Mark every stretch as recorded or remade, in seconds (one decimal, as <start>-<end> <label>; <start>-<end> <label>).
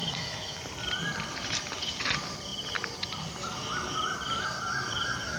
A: 0.0-0.6 remade; 0.6-5.4 recorded